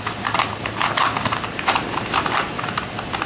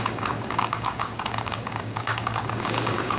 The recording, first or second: first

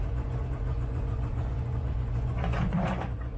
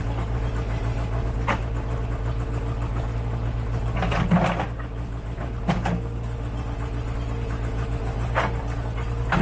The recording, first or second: second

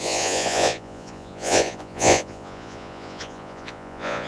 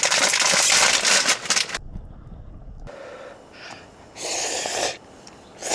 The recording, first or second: second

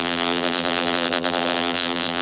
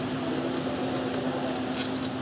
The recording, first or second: second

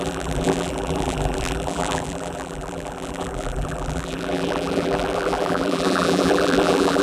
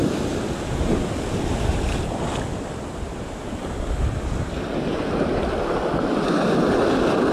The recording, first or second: second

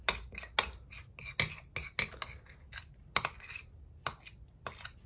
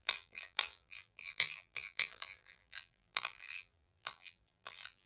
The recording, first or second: first